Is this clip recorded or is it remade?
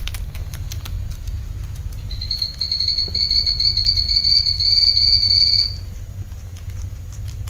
recorded